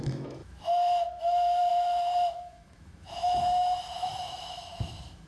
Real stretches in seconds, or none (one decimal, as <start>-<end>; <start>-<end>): none